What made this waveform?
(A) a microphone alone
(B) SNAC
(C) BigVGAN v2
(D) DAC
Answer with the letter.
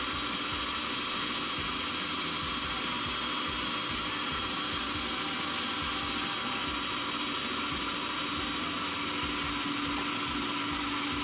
A